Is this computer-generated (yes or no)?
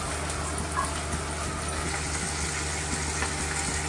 no